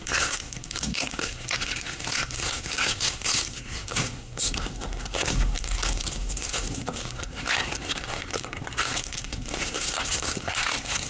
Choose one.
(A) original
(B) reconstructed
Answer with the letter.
B